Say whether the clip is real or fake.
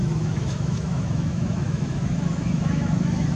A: fake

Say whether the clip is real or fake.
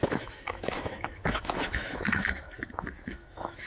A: fake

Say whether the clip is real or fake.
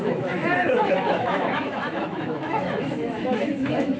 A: fake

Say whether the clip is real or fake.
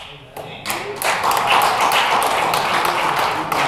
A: real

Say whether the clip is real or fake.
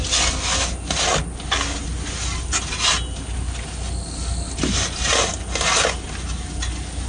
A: real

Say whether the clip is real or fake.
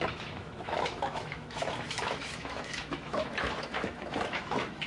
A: fake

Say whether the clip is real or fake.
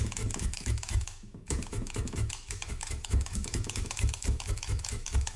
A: fake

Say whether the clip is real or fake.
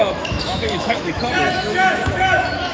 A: fake